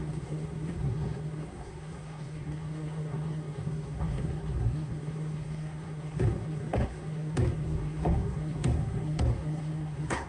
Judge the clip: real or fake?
fake